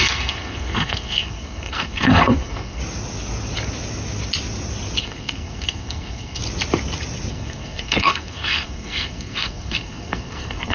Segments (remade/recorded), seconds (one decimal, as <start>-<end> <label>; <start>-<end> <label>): 0.0-2.8 remade; 2.8-5.0 recorded; 5.0-6.4 remade; 6.4-7.3 recorded; 7.3-10.7 remade